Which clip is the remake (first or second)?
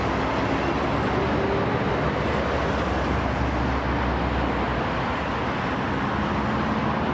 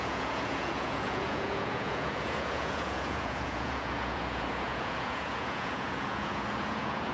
second